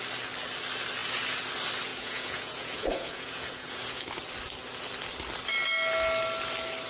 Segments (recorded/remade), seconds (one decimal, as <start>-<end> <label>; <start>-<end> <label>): 0.0-1.9 recorded; 1.9-4.0 remade; 4.0-6.9 recorded